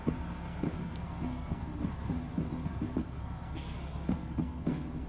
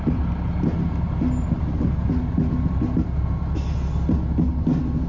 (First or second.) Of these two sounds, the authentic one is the second